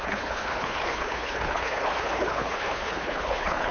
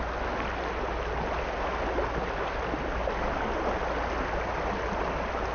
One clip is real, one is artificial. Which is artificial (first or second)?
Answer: first